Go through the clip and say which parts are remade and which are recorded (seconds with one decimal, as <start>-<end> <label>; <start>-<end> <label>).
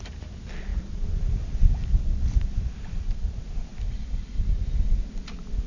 0.0-3.7 recorded; 3.7-4.6 remade; 4.6-5.7 recorded